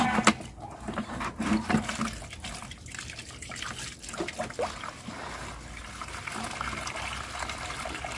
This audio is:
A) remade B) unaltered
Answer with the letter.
B